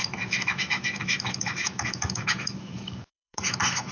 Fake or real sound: fake